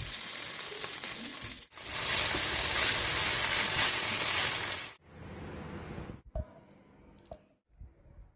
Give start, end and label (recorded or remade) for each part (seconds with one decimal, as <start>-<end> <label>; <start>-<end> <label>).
0.0-8.4 recorded